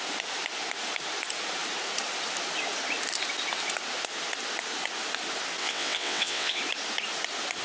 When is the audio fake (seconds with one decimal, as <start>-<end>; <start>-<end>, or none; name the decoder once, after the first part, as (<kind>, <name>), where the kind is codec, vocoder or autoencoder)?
5.6-6.6 (vocoder, WaveNeXt)